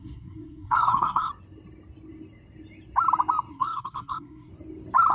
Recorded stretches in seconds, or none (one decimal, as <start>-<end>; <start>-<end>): 1.3-3.5; 4.5-5.1